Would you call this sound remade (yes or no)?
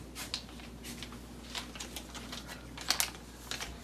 no